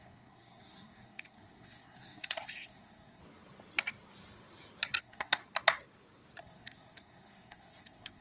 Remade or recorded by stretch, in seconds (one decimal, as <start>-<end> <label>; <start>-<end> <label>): 0.0-3.2 remade; 3.2-5.0 recorded; 5.0-5.4 remade; 5.4-6.4 recorded; 6.4-8.2 remade